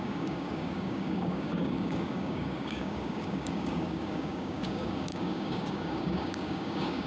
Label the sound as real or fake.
fake